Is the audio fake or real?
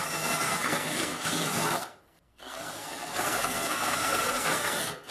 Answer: fake